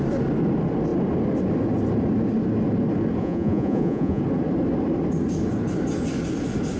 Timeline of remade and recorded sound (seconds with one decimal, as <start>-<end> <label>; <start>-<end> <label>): 0.0-3.2 recorded; 3.2-4.2 remade; 4.2-6.8 recorded

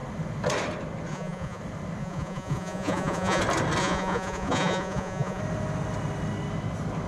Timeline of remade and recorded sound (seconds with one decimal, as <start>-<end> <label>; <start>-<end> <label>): 0.0-1.1 recorded; 1.1-1.6 remade; 1.6-2.0 recorded; 2.0-3.4 remade; 3.4-3.8 recorded; 3.8-5.4 remade; 5.4-7.1 recorded

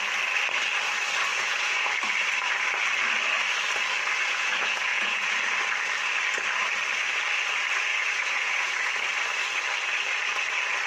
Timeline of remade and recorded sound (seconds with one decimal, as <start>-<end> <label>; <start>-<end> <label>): 0.0-1.3 recorded; 1.3-1.9 remade; 1.9-4.2 recorded; 4.2-5.4 remade; 5.4-7.9 recorded; 7.9-9.0 remade; 9.0-10.9 recorded

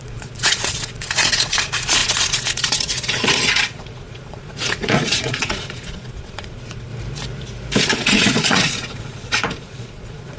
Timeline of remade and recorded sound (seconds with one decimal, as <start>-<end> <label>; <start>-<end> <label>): 0.0-6.9 remade; 6.9-7.8 recorded; 7.8-10.4 remade

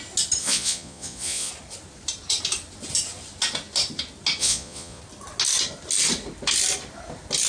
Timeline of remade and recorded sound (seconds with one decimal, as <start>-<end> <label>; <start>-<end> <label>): 0.0-0.4 recorded; 0.4-1.5 remade; 1.5-4.4 recorded; 4.4-5.0 remade; 5.0-7.5 recorded